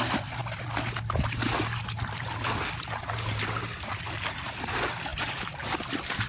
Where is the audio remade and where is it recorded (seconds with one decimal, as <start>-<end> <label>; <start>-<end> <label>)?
0.0-6.3 recorded